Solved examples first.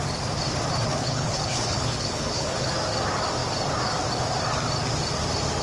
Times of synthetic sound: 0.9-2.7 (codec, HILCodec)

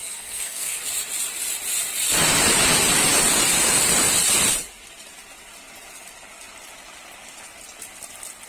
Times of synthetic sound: 0.0-0.8 (codec, SNAC)

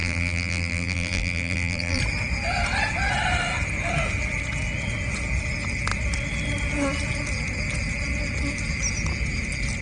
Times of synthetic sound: 0.0-2.0 (vocoder, BigVGAN v2)

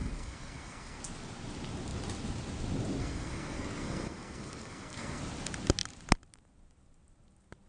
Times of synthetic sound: 0.0-1.0 (codec, SNAC); 3.0-5.2